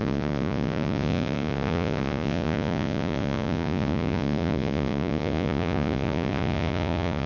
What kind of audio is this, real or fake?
fake